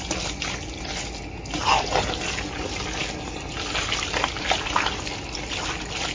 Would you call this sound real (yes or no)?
yes